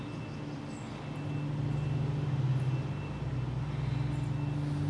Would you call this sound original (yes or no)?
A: yes